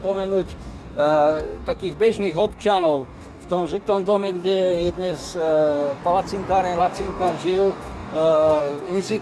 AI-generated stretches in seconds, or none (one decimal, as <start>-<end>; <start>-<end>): 0.0-6.0; 6.8-9.2